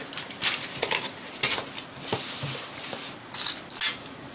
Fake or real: real